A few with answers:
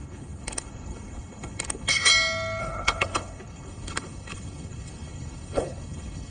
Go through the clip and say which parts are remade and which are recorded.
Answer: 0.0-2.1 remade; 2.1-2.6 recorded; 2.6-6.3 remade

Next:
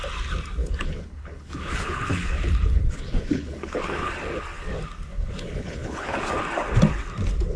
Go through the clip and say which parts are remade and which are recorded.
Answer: 0.0-0.6 recorded; 0.6-4.1 remade; 4.1-5.1 recorded; 5.1-6.3 remade; 6.3-7.6 recorded